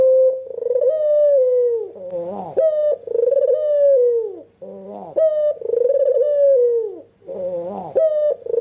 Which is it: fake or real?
real